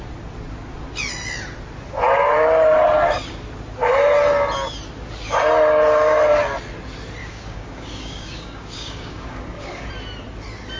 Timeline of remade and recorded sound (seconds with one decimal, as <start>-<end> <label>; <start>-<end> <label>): 0.0-7.2 recorded; 7.2-9.9 remade; 9.9-10.8 recorded